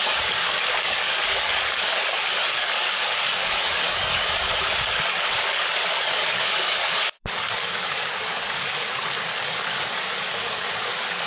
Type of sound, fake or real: fake